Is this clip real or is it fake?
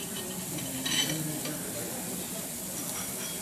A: real